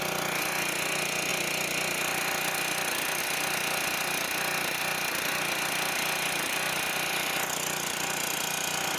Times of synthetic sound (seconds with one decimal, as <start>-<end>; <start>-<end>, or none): none